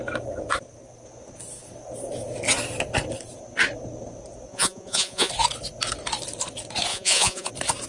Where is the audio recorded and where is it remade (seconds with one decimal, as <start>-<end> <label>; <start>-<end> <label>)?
0.0-4.5 recorded; 4.5-5.3 remade; 5.3-6.9 recorded; 6.9-7.5 remade; 7.5-7.9 recorded